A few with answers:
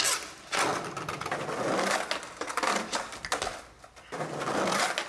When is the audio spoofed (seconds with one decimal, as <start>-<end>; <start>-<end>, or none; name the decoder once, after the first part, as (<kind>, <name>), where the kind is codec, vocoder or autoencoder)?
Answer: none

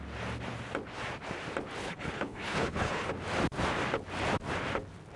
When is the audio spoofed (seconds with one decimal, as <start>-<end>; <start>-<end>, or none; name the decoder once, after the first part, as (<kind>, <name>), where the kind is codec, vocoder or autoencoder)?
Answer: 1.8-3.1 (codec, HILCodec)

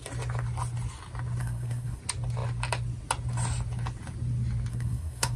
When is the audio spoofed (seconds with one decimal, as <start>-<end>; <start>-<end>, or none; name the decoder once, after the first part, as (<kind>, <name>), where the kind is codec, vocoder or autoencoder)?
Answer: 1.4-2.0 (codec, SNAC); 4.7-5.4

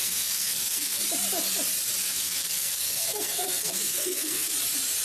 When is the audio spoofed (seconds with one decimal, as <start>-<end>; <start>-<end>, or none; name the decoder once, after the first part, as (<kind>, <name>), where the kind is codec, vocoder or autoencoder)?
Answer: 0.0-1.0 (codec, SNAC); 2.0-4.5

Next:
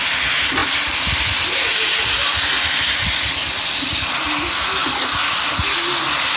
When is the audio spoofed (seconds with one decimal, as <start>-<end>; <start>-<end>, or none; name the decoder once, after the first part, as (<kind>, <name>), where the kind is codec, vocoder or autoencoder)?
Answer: none

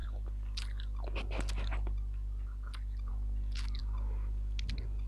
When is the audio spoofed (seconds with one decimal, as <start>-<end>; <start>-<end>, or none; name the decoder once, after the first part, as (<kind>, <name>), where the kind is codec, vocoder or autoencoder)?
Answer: none

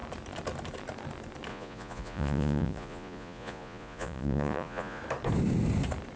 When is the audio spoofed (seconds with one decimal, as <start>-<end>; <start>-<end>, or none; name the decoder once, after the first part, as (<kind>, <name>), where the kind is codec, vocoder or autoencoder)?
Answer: 1.5-5.0 (vocoder, Vocos)